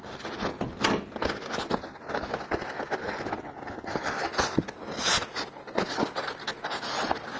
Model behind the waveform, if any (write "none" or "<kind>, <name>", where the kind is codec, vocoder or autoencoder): none